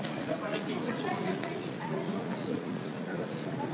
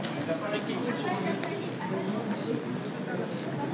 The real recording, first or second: second